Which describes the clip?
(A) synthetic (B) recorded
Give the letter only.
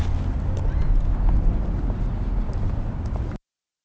B